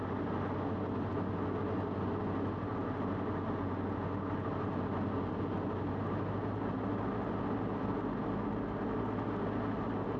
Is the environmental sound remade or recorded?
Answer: recorded